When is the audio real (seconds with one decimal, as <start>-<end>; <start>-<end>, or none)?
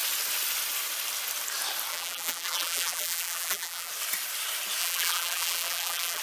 0.0-1.9; 3.9-4.8